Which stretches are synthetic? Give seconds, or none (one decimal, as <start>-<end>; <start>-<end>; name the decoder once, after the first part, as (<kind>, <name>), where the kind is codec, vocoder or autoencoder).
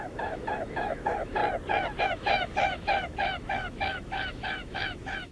0.0-1.4 (autoencoder, DAC-VAE); 2.0-5.3